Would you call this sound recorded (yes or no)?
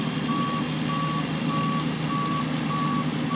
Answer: yes